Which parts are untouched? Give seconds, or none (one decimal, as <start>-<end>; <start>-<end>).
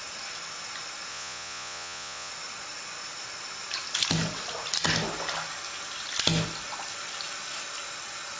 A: 0.0-1.1; 2.3-8.4